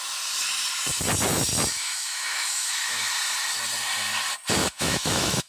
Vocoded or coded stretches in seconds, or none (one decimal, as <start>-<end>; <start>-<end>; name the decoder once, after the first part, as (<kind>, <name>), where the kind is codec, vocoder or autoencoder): 1.7-3.0 (autoencoder, DAC-VAE); 4.6-5.5